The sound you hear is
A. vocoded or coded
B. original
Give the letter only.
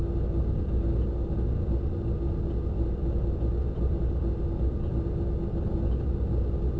B